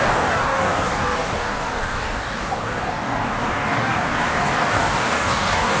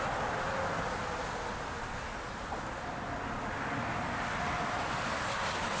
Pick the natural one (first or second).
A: second